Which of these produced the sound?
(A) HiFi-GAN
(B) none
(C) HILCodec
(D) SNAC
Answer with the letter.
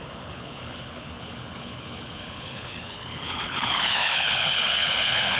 C